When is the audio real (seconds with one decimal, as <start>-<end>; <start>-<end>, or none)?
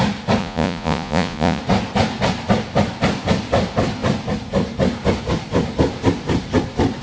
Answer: 0.0-0.4; 1.6-7.0